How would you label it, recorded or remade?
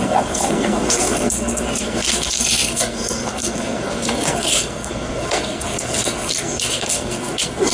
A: remade